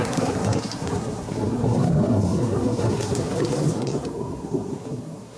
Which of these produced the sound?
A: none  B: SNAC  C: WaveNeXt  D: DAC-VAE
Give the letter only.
B